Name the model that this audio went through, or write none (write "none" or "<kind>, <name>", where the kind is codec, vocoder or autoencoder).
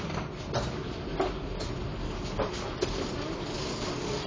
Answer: none